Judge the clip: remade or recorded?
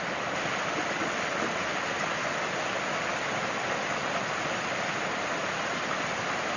recorded